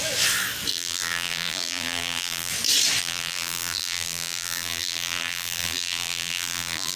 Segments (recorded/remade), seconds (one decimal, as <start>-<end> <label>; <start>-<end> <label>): 0.0-0.7 recorded; 0.7-2.5 remade; 2.5-3.0 recorded; 3.0-7.0 remade